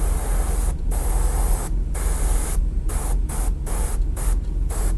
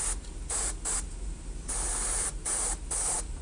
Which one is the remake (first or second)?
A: second